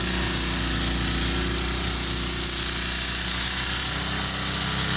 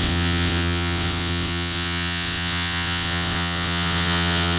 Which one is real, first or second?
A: first